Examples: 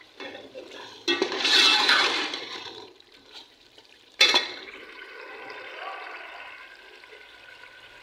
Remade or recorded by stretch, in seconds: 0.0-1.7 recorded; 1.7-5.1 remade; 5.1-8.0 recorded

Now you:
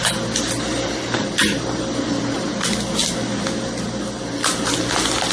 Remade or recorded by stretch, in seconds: 0.0-5.3 recorded

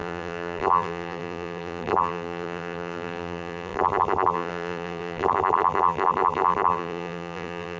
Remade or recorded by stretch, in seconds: 0.0-7.8 remade

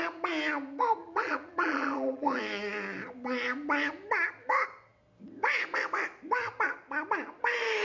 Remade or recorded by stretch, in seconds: 0.0-1.0 recorded; 1.0-2.4 remade; 2.4-7.8 recorded

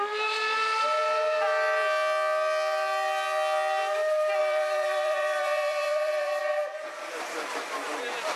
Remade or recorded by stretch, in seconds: 0.0-4.4 recorded; 4.4-6.4 remade; 6.4-8.4 recorded

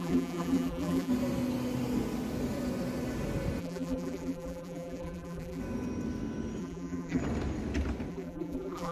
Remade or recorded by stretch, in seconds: 0.0-1.1 remade; 1.1-3.6 recorded; 3.6-5.6 remade; 5.6-6.6 recorded; 6.6-7.2 remade; 7.2-8.1 recorded; 8.1-8.9 remade

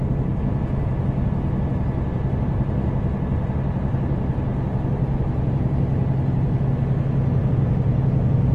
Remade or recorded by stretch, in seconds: 0.0-8.5 recorded